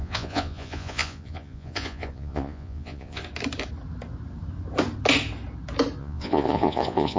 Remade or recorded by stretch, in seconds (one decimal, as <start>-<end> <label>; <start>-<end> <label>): 0.0-3.2 remade; 3.2-6.0 recorded; 6.0-7.2 remade